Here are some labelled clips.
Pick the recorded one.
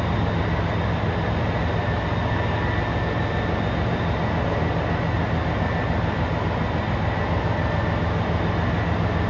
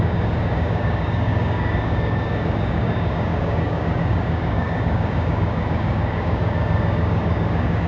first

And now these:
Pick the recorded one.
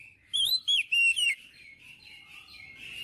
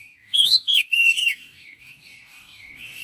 first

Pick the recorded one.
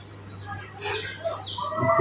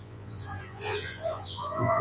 first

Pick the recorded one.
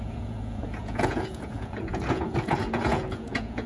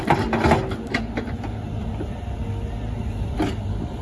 second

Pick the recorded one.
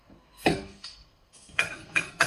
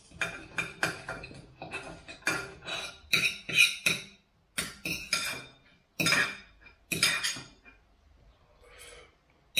second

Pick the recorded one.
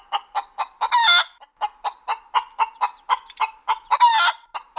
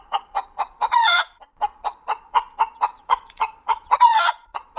first